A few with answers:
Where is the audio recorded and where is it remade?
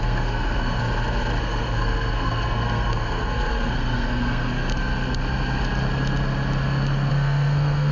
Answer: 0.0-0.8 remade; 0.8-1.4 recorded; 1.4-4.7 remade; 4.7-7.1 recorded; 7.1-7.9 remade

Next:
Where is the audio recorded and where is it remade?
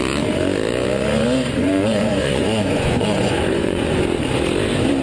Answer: 0.0-1.6 recorded; 1.6-4.0 remade; 4.0-5.0 recorded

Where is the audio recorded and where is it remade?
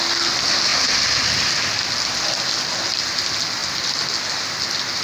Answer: 0.0-5.0 recorded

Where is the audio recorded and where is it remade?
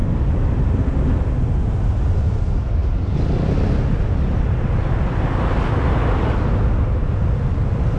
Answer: 0.0-8.0 recorded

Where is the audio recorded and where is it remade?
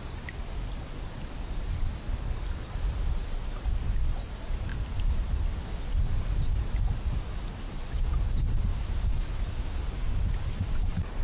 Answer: 0.0-8.7 recorded; 8.7-9.8 remade; 9.8-11.2 recorded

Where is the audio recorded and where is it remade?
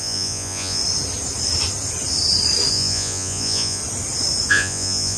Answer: 0.0-0.8 remade; 0.8-2.7 recorded; 2.7-3.8 remade; 3.8-4.5 recorded; 4.5-5.2 remade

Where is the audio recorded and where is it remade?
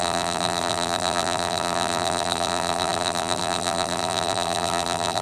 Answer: 0.0-5.2 remade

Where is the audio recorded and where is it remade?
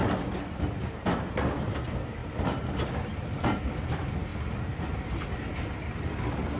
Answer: 0.0-6.6 recorded